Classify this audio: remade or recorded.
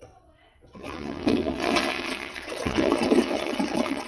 remade